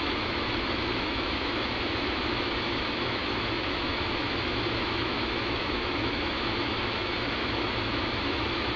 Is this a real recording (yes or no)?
no